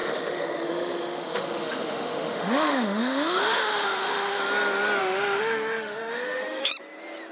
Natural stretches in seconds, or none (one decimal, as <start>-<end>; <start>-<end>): 4.4-5.0; 6.7-7.3